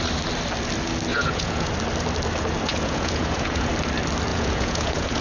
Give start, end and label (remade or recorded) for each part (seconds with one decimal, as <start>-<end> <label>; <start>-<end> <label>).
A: 0.0-1.1 recorded; 1.1-1.7 remade; 1.7-2.7 recorded; 2.7-3.7 remade; 3.7-4.3 recorded; 4.3-5.2 remade